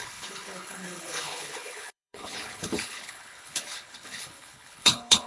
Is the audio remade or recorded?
remade